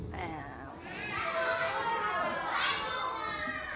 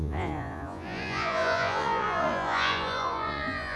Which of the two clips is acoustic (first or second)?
first